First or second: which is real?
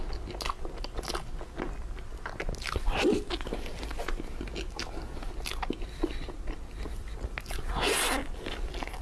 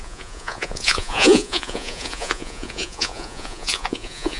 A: first